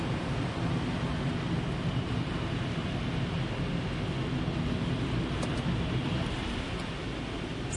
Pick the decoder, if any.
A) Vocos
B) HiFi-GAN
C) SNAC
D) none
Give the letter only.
D